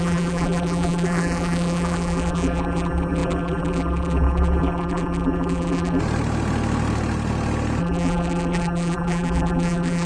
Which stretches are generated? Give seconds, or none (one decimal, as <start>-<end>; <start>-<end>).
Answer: 0.0-6.0; 7.8-10.1